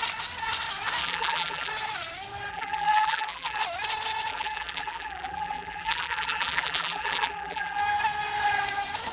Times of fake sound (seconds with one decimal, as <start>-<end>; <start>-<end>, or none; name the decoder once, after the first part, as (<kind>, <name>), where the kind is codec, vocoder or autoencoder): 1.0-1.7 (vocoder, BigVGAN v2); 2.5-3.6; 4.3-7.8